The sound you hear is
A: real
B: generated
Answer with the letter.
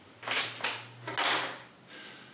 A